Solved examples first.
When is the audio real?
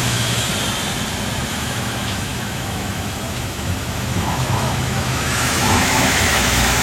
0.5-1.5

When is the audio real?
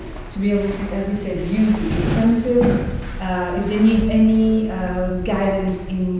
0.0-6.2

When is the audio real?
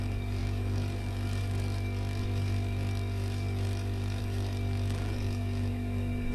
none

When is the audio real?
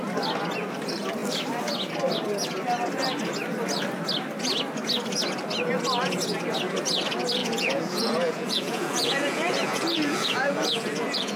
0.0-7.4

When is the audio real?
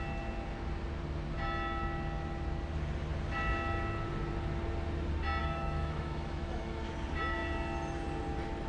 0.0-5.4; 6.9-8.7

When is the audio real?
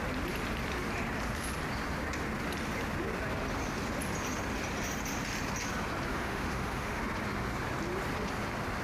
0.0-6.1; 7.0-8.8